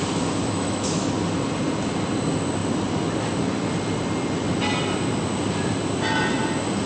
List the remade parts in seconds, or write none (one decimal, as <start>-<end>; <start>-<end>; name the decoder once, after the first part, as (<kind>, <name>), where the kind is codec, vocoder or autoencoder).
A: 0.4-1.1 (autoencoder, DAC-VAE)